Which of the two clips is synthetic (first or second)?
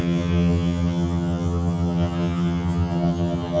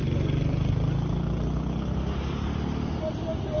first